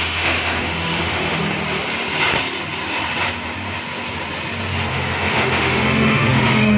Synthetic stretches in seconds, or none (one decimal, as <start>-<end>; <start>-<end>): 0.0-1.4; 4.9-6.8